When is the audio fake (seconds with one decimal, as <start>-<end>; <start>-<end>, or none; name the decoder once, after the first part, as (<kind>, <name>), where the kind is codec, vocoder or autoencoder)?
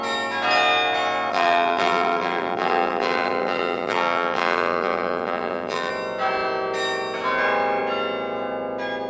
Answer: 1.3-5.9 (vocoder, BigVGAN v2)